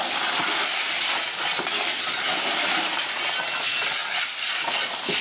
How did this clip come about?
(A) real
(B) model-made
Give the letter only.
A